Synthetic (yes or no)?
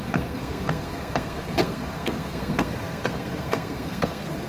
yes